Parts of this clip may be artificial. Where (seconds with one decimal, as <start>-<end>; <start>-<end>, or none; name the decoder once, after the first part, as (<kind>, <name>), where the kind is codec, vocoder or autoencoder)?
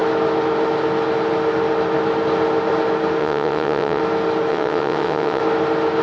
3.2-4.0 (vocoder, WaveNeXt); 4.5-5.4